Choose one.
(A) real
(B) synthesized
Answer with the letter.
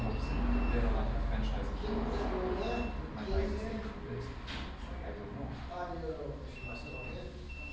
A